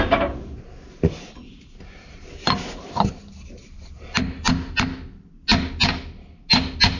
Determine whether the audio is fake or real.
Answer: real